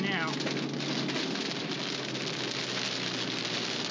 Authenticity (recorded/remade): recorded